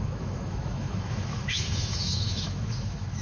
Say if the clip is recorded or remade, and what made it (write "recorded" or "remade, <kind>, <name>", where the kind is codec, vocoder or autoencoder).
remade, autoencoder, DAC-VAE